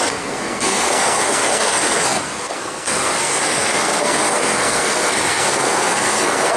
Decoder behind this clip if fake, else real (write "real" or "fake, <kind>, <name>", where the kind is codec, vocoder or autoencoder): fake, codec, SNAC